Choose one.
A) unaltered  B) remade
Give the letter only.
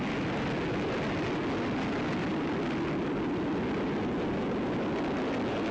A